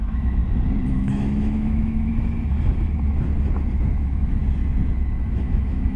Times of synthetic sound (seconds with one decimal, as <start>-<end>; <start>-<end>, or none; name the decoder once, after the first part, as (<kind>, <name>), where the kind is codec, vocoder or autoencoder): 0.0-0.4 (autoencoder, DAC-VAE); 0.9-2.1; 4.0-4.4; 5.3-6.0